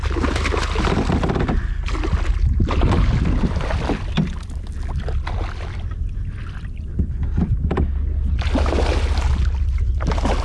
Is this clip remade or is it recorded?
recorded